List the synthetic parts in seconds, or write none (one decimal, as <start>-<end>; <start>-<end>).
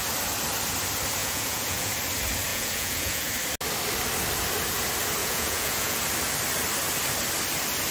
1.2-1.9; 2.5-3.3; 5.2-6.0